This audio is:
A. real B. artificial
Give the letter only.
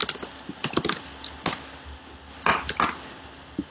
A